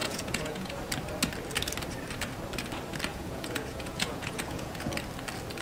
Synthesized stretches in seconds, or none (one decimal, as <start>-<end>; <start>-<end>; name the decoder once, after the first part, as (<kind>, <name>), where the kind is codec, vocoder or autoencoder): 0.0-0.7 (vocoder, Vocos); 3.1-4.9